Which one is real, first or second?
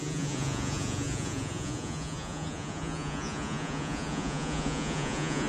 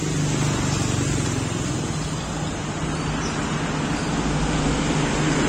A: second